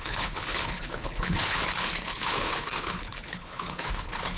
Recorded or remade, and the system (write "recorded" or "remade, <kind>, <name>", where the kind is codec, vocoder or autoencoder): remade, codec, HILCodec